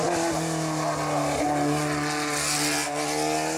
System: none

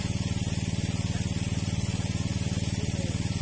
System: none